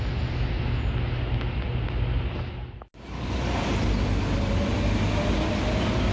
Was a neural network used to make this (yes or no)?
no